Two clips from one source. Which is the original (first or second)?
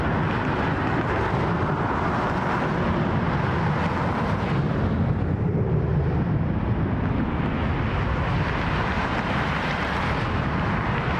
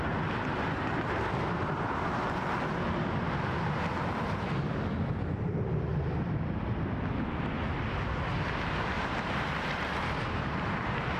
first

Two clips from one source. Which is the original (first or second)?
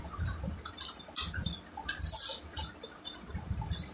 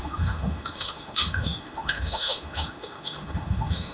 first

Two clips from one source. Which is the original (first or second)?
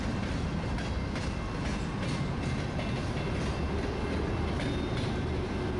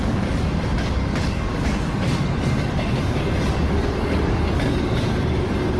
first